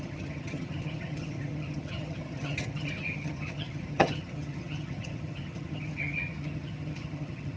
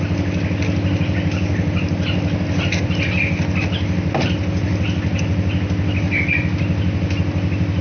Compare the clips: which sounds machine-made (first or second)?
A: first